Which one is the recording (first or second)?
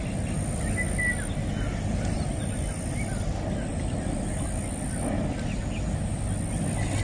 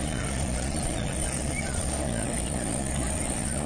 first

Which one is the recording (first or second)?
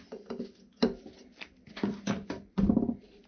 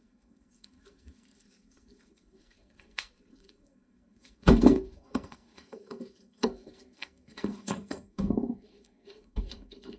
first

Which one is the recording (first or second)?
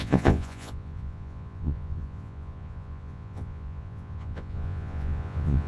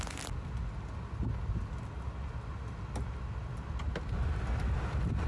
second